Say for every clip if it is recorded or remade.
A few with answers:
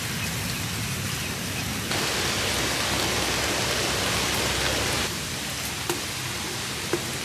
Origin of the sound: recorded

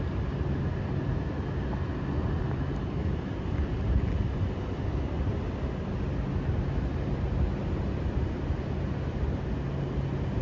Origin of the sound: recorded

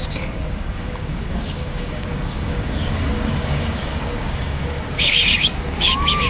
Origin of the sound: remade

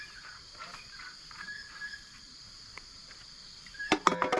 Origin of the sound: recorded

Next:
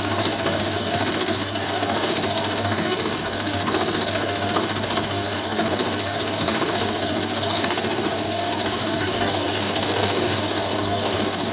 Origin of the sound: remade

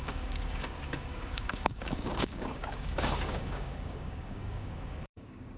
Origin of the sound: remade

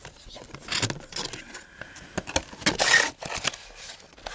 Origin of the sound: recorded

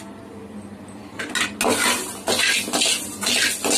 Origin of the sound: recorded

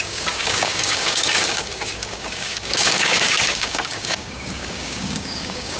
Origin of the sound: remade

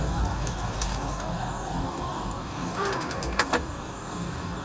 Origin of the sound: remade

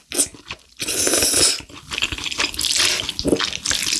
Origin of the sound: recorded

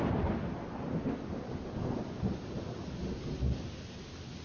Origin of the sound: recorded